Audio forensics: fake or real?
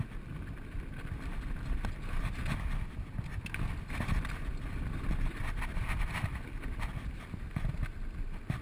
real